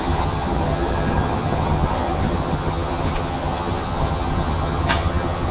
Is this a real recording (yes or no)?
no